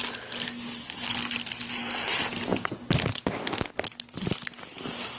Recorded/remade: recorded